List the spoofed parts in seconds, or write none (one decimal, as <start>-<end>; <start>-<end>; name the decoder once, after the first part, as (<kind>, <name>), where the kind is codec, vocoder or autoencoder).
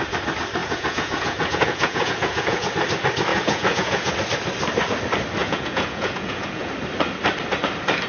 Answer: 0.6-2.7 (vocoder, Vocos); 3.3-4.1; 5.4-6.7